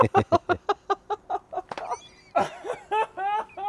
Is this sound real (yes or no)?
yes